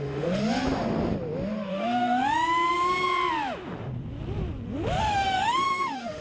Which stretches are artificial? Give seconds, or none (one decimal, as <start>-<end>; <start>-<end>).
0.0-0.4; 1.7-2.2; 5.0-6.2